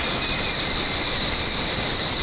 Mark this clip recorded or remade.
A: recorded